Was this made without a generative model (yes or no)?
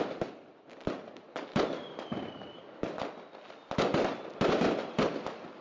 yes